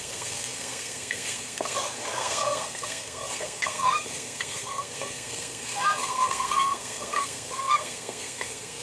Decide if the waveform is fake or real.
fake